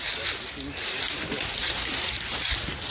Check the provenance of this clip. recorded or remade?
recorded